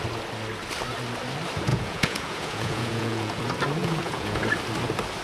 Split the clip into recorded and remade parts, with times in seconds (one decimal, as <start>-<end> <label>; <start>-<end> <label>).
0.0-1.7 recorded; 1.7-3.4 remade; 3.4-3.8 recorded; 3.8-4.4 remade; 4.4-5.2 recorded